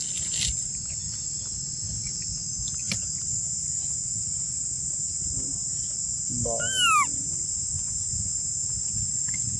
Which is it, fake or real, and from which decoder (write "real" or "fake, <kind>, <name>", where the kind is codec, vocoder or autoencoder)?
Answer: real